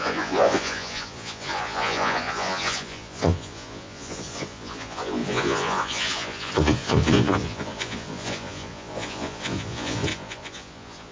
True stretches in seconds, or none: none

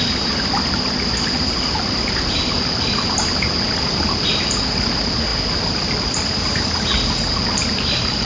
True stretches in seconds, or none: 0.0-8.3

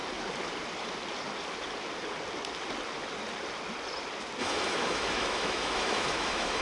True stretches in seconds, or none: 0.0-4.4

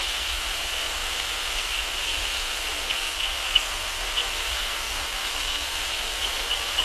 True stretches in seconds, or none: none

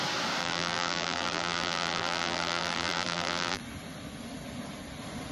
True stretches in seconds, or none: 0.0-0.4; 3.6-5.3